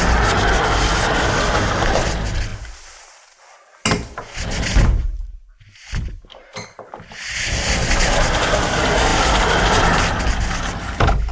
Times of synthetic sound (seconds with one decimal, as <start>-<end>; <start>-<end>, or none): 9.1-10.3